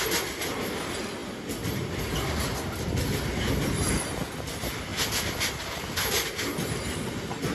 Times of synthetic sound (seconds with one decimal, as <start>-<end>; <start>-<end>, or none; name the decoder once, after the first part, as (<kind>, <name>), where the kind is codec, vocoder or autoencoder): none